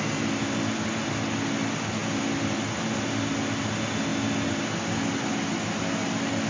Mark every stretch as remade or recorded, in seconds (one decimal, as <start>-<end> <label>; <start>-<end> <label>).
0.0-6.5 recorded